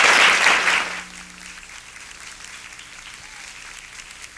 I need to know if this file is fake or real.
real